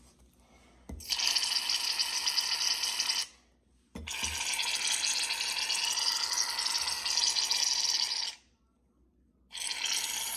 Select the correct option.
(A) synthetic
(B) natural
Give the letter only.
B